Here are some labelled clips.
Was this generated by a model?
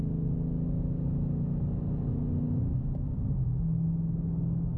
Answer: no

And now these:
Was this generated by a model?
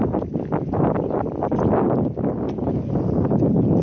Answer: no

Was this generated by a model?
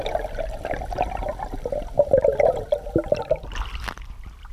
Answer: no